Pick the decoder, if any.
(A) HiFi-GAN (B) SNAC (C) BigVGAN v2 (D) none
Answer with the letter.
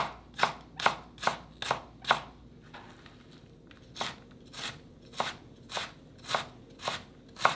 D